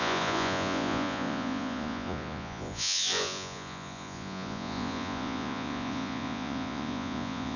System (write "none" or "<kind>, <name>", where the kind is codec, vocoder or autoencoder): vocoder, Vocos